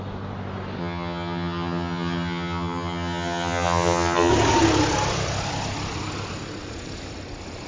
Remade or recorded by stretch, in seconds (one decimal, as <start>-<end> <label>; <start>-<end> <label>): 0.0-0.8 recorded; 0.8-4.3 remade; 4.3-7.7 recorded